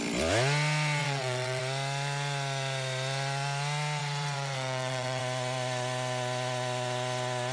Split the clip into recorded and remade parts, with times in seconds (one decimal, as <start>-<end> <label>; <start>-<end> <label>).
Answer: 0.0-1.0 recorded; 1.0-1.6 remade; 1.6-4.0 recorded; 4.0-5.2 remade; 5.2-7.5 recorded